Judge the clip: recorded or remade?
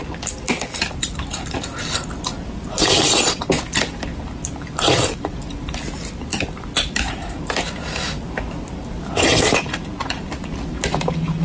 recorded